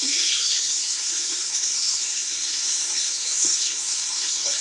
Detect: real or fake fake